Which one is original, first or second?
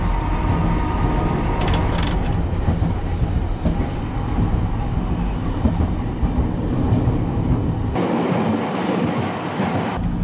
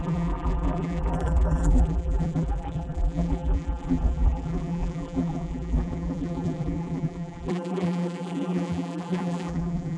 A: first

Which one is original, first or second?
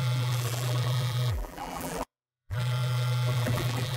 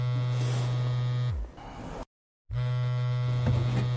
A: second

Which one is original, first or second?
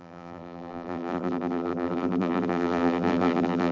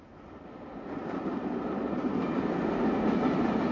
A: second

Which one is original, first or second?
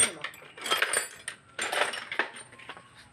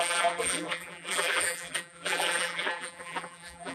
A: first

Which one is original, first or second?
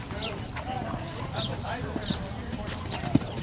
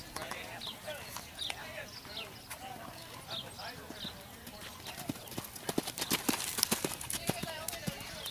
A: second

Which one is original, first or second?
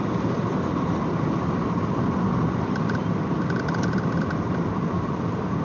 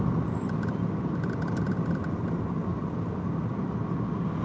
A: second